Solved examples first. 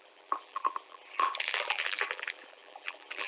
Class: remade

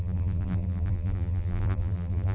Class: remade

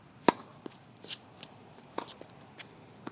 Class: recorded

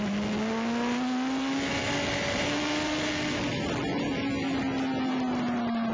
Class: recorded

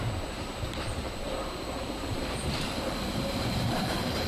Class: remade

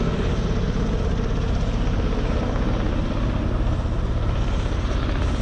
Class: remade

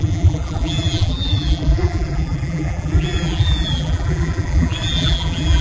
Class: remade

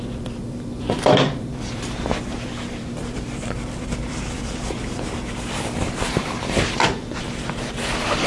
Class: remade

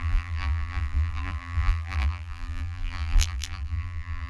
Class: remade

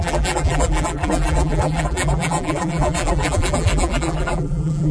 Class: remade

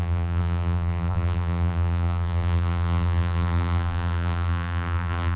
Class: remade